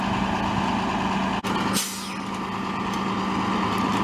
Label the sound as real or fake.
real